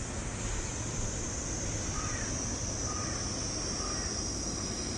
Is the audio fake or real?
real